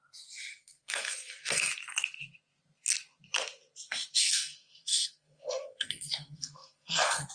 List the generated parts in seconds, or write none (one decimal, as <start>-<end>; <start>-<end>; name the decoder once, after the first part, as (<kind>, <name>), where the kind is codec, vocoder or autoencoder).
0.5-1.7 (codec, SNAC); 4.2-7.3